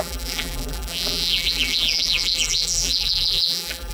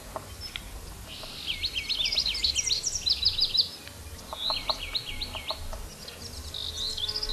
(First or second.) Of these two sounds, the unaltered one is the second